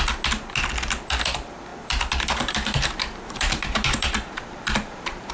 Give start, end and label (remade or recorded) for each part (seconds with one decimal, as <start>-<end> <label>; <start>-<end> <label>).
0.0-1.7 recorded; 1.7-5.3 remade